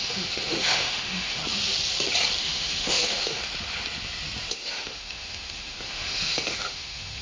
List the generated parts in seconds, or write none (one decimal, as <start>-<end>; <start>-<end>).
0.0-1.4; 2.4-3.4; 4.5-7.2